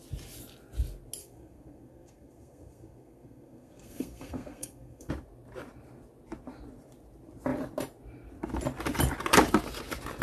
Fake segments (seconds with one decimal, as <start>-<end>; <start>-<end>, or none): 1.2-5.1